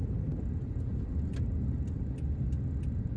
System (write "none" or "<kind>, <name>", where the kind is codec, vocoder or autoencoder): none